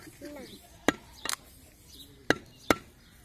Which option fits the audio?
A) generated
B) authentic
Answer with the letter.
B